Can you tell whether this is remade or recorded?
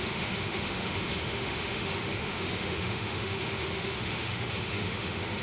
remade